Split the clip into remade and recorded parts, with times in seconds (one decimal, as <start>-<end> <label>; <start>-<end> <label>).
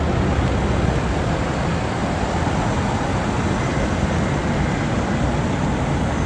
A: 0.0-2.0 recorded; 2.0-2.6 remade; 2.6-3.7 recorded; 3.7-4.4 remade; 4.4-6.3 recorded